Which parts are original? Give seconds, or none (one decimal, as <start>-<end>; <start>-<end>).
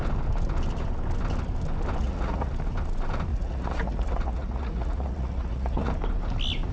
0.0-2.0; 2.5-3.3; 5.9-6.7